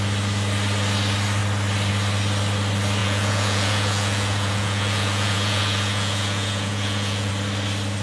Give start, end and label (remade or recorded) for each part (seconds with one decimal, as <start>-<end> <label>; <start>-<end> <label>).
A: 0.0-3.0 recorded; 3.0-7.3 remade; 7.3-8.0 recorded